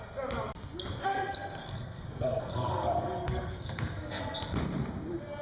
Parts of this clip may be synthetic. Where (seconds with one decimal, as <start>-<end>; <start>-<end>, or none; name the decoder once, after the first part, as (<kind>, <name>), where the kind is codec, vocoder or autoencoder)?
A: 1.0-4.2 (codec, SNAC)